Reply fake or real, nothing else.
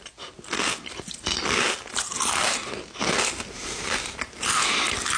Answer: real